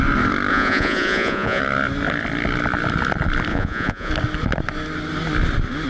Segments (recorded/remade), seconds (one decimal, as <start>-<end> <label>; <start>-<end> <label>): 0.0-0.5 recorded; 0.5-1.6 remade; 1.6-3.5 recorded; 3.5-4.1 remade; 4.1-5.9 recorded